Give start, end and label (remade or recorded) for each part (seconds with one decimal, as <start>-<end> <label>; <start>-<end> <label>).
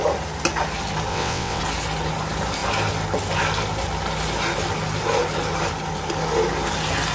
0.0-1.1 recorded; 1.1-1.6 remade; 1.6-7.1 recorded